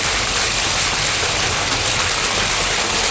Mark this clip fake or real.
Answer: real